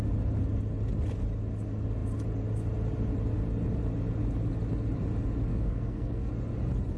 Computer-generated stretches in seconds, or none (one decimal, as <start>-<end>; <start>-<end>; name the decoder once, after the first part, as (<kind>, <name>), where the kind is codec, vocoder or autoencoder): 5.5-6.3 (codec, SNAC)